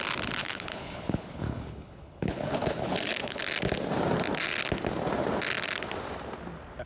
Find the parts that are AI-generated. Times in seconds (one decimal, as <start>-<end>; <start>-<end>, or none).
0.4-3.4